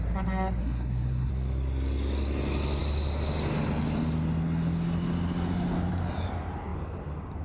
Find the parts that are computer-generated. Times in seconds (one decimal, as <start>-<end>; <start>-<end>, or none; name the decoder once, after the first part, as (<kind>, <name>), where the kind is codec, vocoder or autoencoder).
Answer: 0.6-1.3 (codec, SNAC)